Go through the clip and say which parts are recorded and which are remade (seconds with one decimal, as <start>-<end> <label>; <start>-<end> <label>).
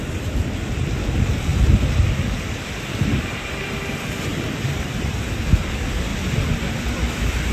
0.0-4.3 recorded; 4.3-5.1 remade; 5.1-6.1 recorded; 6.1-7.5 remade